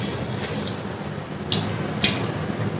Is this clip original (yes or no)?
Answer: yes